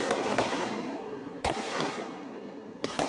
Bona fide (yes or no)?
no